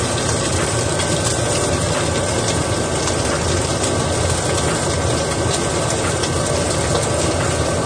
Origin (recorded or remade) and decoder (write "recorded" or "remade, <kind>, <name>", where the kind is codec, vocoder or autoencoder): recorded